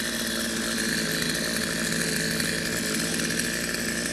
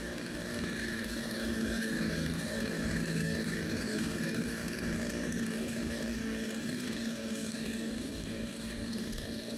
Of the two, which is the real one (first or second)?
first